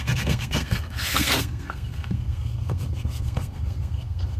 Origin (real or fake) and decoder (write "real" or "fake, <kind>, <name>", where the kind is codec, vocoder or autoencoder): fake, codec, SNAC